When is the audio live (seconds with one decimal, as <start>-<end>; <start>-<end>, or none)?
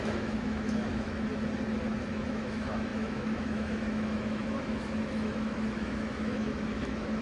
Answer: 1.3-2.1